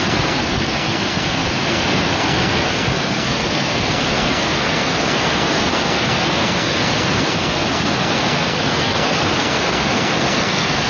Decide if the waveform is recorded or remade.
remade